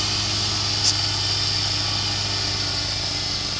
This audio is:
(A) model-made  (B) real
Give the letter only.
B